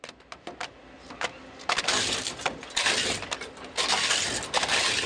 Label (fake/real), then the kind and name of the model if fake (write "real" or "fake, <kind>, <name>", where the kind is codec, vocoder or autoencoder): real